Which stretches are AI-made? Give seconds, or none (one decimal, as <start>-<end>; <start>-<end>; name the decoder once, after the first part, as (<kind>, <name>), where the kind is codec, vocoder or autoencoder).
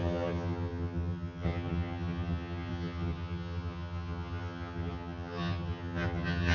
0.0-6.5 (vocoder, HiFi-GAN)